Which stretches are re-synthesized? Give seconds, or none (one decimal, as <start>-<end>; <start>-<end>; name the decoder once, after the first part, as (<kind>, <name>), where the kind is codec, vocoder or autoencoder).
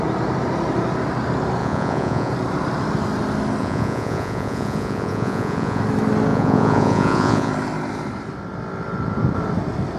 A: 1.6-2.3 (vocoder, Vocos); 3.6-5.8; 6.3-7.5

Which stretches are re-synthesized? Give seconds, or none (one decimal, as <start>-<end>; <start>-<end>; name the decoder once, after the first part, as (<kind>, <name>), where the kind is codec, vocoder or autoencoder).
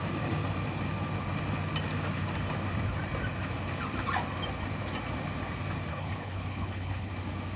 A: 5.9-7.1 (codec, HILCodec)